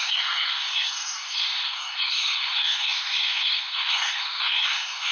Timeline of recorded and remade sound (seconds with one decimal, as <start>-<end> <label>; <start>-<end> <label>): 0.0-5.1 remade